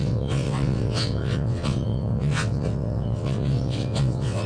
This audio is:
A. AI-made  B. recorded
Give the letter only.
A